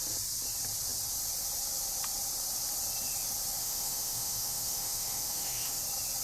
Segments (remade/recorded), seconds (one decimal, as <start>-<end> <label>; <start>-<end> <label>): 0.0-3.6 recorded; 3.6-5.8 remade; 5.8-6.2 recorded